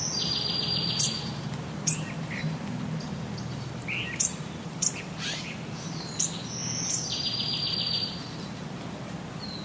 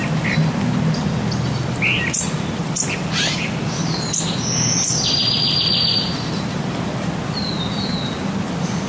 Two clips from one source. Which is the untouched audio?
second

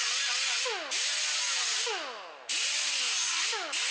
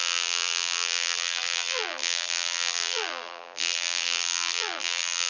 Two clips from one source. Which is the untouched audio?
first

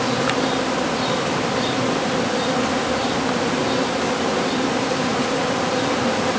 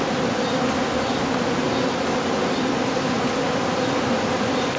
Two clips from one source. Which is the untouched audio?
second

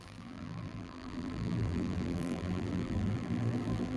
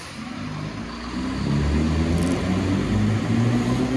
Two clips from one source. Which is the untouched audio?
second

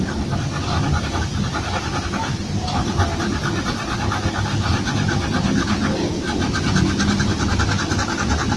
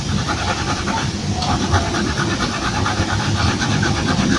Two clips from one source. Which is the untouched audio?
first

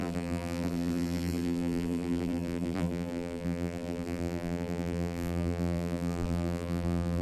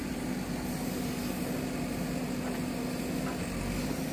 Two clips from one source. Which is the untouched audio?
second